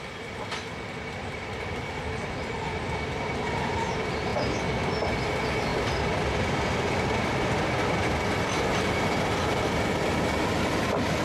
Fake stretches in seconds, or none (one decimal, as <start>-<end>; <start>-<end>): 5.7-9.6